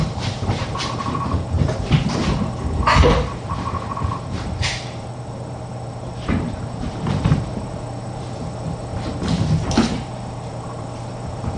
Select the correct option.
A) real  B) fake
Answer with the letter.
B